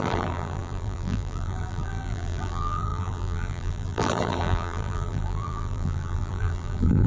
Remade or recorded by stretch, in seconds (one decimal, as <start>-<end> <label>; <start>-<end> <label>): 0.0-7.1 remade